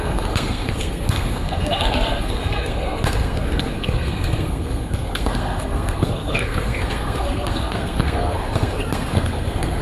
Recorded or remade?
remade